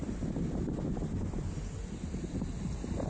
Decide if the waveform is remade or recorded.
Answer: recorded